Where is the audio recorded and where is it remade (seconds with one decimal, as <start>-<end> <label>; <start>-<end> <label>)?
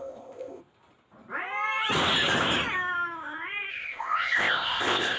0.0-0.6 remade; 0.6-3.7 recorded; 3.7-5.2 remade